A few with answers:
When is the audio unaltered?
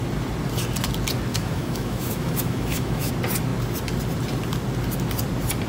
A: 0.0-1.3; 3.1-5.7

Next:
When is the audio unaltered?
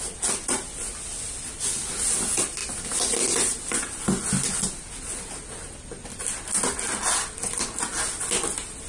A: 0.0-8.9